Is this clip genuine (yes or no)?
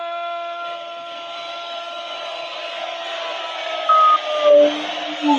yes